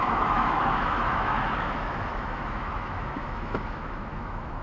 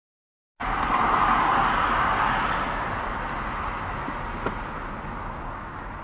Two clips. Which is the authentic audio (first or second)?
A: second